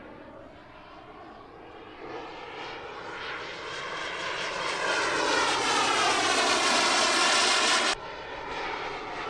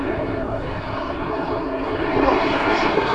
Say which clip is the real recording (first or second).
first